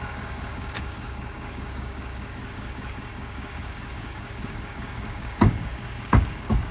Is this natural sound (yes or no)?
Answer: no